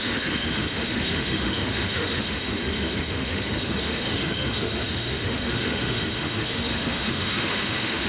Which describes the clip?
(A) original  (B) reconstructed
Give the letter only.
B